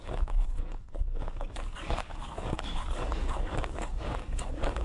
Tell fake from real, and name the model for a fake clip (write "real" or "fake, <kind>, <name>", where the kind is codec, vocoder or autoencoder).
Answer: fake, codec, DAC